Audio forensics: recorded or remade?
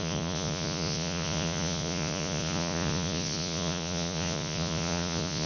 remade